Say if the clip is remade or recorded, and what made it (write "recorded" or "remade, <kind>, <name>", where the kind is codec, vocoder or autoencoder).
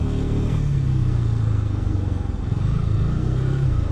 remade, codec, SNAC